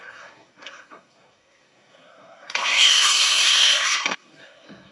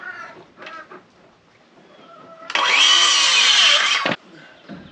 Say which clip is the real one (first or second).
second